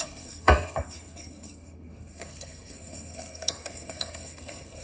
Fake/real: fake